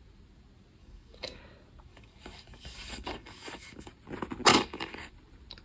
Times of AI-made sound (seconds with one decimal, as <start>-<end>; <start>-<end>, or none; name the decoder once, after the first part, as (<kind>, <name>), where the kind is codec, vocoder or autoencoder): 0.8-1.4 (codec, DAC); 1.9-3.9; 4.5-5.1